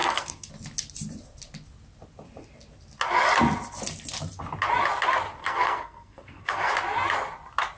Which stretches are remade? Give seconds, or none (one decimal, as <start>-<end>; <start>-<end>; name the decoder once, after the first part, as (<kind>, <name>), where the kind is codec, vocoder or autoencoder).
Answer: 0.0-0.5 (codec, SNAC); 5.4-6.7